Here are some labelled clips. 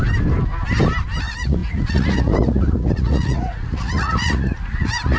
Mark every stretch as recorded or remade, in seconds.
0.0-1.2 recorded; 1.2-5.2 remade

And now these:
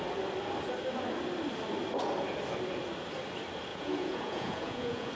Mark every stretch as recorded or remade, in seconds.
0.0-3.7 recorded; 3.7-5.1 remade

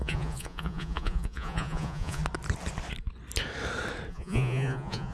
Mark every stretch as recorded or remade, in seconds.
0.0-2.2 remade; 2.2-4.1 recorded; 4.1-5.1 remade